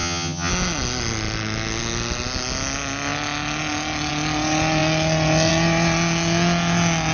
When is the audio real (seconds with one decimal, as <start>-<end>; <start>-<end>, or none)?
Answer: 0.5-7.1